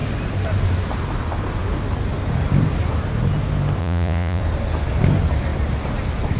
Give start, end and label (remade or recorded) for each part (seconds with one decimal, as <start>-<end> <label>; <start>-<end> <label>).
0.0-3.8 recorded; 3.8-4.4 remade; 4.4-6.4 recorded